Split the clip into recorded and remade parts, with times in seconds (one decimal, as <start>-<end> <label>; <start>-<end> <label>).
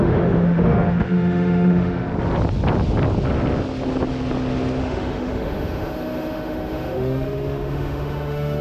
0.0-2.0 remade; 2.0-4.8 recorded; 4.8-8.6 remade